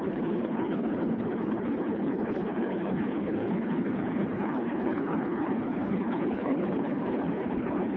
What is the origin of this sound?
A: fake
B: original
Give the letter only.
A